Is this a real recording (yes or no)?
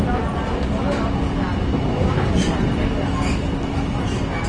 yes